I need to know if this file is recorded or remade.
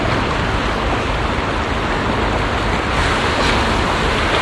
recorded